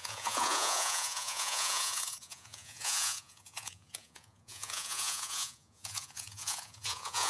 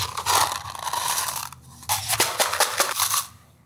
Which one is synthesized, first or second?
first